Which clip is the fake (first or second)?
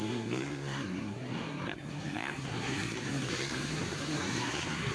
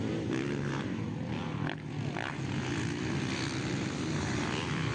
first